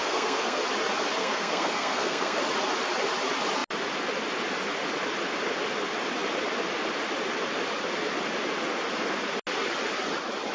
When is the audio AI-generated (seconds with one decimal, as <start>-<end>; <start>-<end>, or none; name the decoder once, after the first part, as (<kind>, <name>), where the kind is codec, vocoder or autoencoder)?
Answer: 0.0-0.6 (codec, SNAC); 1.2-2.4